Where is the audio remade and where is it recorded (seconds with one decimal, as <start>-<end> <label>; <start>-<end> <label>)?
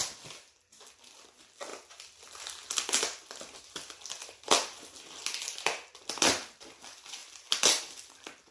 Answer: 0.0-8.5 recorded